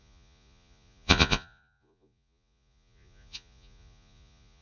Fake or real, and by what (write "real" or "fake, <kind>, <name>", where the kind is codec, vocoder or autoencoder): fake, vocoder, Vocos